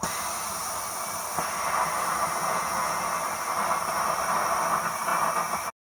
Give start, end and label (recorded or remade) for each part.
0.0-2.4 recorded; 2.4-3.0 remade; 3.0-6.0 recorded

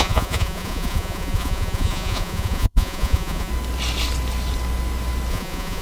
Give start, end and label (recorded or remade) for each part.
0.0-3.5 remade; 3.5-5.3 recorded; 5.3-5.8 remade

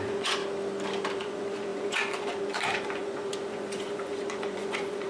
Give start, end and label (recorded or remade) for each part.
0.0-0.4 remade; 0.4-1.2 recorded; 1.2-5.1 remade

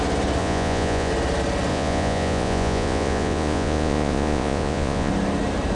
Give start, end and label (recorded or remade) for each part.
0.0-0.4 recorded; 0.4-1.1 remade; 1.1-1.7 recorded; 1.7-5.1 remade; 5.1-5.7 recorded